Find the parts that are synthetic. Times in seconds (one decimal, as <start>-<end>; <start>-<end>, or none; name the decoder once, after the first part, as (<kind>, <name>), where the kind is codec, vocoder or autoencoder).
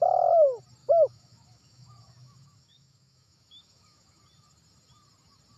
0.8-4.2 (autoencoder, DAC-VAE)